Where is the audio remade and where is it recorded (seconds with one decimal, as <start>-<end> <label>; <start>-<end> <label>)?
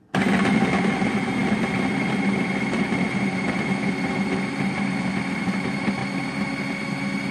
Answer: 0.0-7.3 recorded